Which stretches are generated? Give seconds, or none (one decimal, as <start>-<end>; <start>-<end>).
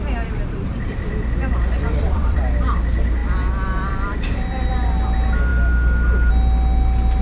1.8-2.4